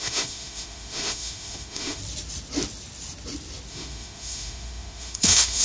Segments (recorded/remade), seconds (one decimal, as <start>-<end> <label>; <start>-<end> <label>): 0.0-2.0 remade; 2.0-3.7 recorded; 3.7-5.6 remade